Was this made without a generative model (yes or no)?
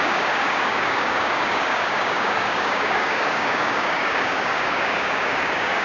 no